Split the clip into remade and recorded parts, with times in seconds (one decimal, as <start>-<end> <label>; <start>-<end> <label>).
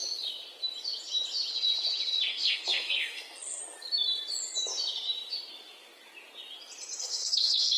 0.0-2.3 recorded; 2.3-3.6 remade; 3.6-7.0 recorded; 7.0-7.8 remade